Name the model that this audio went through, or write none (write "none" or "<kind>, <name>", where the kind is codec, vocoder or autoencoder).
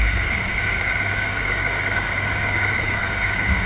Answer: codec, DAC